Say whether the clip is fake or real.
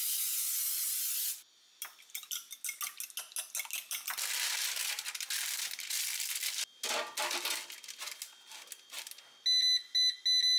real